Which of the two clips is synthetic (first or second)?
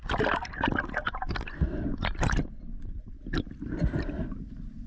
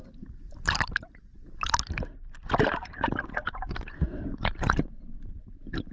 second